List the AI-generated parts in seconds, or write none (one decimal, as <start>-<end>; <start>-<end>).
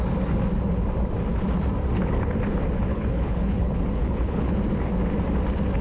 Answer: 2.9-4.6